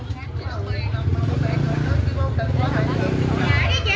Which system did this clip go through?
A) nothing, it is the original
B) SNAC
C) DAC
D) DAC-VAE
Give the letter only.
A